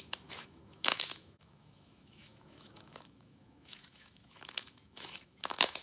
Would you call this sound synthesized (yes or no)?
yes